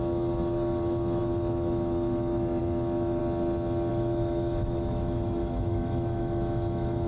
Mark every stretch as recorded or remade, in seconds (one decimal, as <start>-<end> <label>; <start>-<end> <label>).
0.0-3.2 remade; 3.2-3.9 recorded; 3.9-7.1 remade